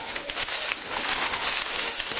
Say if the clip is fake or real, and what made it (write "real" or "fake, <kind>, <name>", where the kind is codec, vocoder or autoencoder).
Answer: fake, autoencoder, DAC-VAE